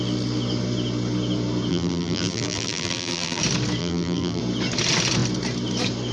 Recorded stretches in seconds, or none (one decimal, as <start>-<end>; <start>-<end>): 0.0-1.7; 3.4-3.8; 4.4-6.1